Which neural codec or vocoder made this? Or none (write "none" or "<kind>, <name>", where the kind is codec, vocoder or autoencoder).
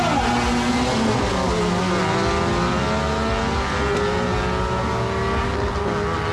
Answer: none